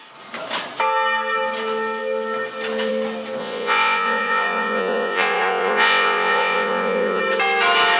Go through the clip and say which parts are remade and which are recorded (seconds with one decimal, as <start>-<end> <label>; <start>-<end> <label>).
0.0-3.4 recorded; 3.4-7.2 remade; 7.2-8.0 recorded